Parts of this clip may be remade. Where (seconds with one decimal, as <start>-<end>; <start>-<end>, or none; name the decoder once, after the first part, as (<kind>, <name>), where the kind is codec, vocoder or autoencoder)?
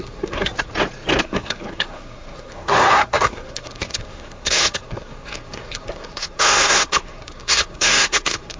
0.0-0.5 (codec, SNAC); 1.2-8.6